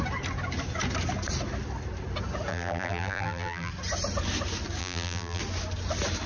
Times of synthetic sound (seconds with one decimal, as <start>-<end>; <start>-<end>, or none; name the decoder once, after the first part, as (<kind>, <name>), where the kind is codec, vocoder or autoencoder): 2.5-3.7 (vocoder, BigVGAN v2); 4.8-5.4